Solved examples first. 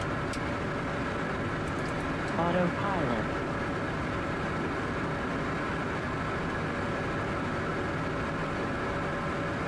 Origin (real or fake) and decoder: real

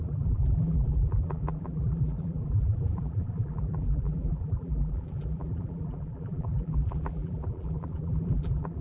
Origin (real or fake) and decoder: fake, vocoder, BigVGAN v2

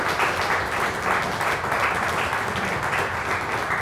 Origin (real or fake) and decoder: fake, vocoder, BigVGAN v2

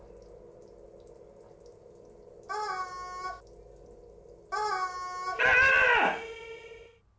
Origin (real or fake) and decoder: real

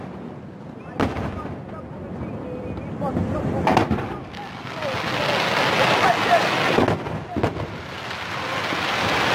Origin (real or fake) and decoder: real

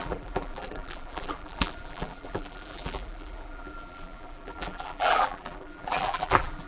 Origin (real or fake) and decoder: fake, vocoder, BigVGAN v2